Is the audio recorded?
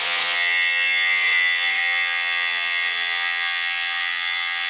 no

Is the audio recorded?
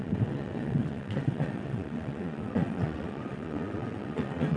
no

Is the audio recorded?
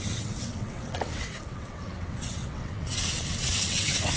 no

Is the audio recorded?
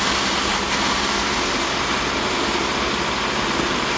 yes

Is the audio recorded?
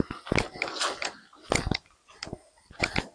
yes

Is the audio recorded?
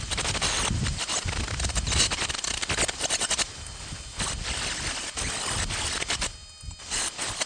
yes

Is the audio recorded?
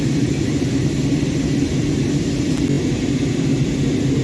yes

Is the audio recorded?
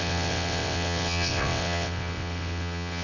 no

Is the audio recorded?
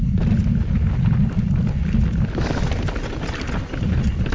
yes